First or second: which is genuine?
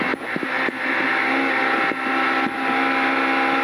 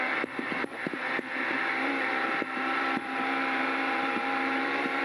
first